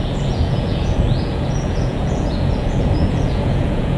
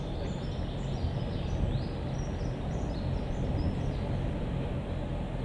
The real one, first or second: second